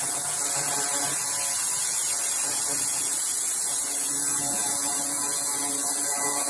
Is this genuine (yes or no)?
no